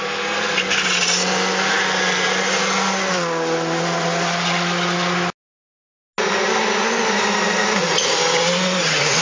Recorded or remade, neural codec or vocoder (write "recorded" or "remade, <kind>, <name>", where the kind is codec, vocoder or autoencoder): recorded